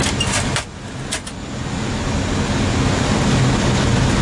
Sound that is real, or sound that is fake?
real